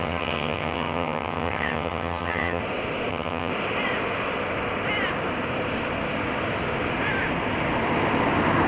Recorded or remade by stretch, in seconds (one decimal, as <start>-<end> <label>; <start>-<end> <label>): 0.0-2.6 remade; 2.6-3.1 recorded; 3.1-3.5 remade; 3.5-8.7 recorded